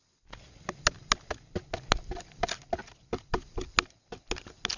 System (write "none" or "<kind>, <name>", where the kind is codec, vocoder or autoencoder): none